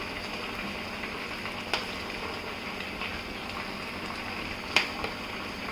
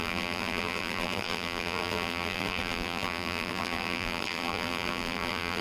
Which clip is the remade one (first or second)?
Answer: second